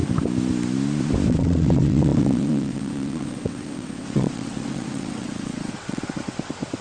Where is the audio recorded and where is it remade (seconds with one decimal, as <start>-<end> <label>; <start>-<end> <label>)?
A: 0.0-1.3 recorded; 1.3-6.8 remade